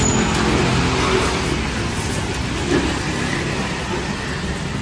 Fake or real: real